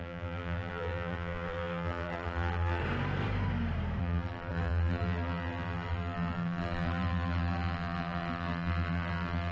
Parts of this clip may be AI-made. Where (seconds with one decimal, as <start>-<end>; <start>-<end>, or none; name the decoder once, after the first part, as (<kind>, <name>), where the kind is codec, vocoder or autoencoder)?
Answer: 0.0-2.8 (vocoder, BigVGAN v2); 4.0-9.5